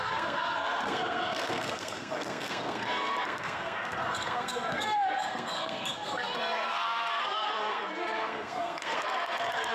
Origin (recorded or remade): remade